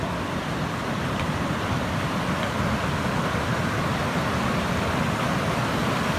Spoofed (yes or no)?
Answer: no